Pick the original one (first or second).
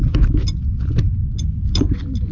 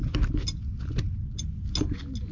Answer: second